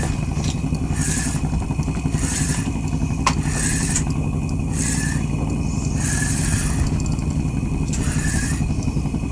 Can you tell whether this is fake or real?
real